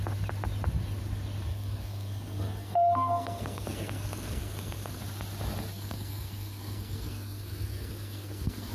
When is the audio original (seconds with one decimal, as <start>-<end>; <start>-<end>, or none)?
0.0-1.5; 5.0-5.7